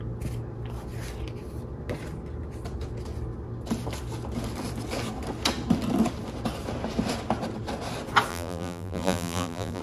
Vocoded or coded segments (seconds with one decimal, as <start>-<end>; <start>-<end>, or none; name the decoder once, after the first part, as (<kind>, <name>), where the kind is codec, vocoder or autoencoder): 8.3-9.8 (vocoder, BigVGAN v2)